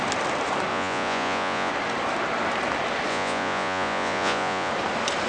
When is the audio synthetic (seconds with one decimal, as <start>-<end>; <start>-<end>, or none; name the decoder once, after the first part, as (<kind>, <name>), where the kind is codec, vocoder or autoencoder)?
0.7-1.7 (vocoder, Vocos); 3.1-4.7

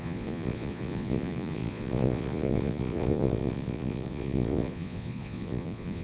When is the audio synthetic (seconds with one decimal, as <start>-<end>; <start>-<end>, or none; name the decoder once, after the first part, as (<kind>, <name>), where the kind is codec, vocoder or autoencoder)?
0.0-6.0 (vocoder, Vocos)

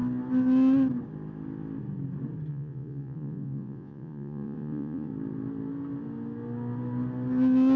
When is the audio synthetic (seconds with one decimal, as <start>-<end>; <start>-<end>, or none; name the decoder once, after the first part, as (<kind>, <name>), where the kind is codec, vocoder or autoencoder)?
2.5-5.1 (vocoder, Vocos)

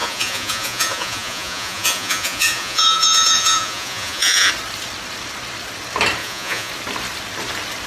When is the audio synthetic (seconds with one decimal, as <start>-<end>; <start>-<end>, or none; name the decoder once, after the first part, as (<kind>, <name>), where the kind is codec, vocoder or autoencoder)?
0.0-4.5 (vocoder, Vocos); 6.2-6.7